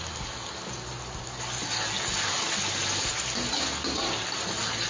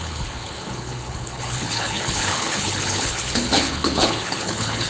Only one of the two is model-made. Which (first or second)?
second